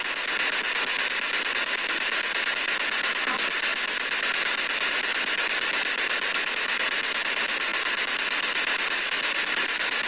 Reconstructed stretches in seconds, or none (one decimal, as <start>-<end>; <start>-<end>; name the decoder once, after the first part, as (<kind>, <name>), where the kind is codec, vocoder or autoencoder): none